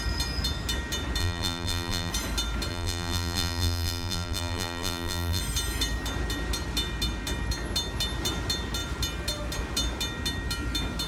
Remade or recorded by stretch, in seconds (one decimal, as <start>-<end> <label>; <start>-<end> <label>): 0.0-1.2 recorded; 1.2-2.1 remade; 2.1-2.7 recorded; 2.7-5.4 remade; 5.4-11.1 recorded